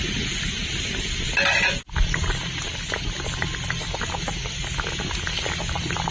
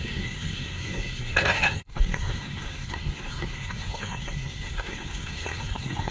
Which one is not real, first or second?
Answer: second